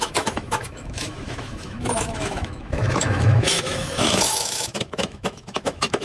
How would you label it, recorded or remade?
remade